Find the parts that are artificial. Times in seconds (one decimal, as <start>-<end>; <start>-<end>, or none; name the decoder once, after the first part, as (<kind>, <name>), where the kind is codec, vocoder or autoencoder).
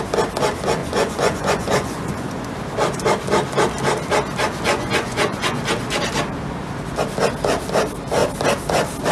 0.8-2.5 (vocoder, Vocos); 4.7-5.6